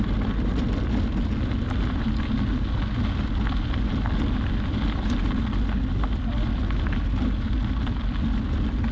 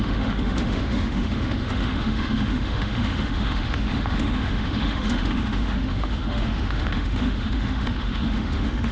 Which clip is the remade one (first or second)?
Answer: second